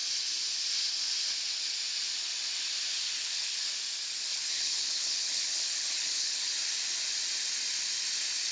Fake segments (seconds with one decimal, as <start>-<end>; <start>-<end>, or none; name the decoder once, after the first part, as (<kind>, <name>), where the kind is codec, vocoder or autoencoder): 2.9-3.6 (codec, HILCodec); 4.3-6.5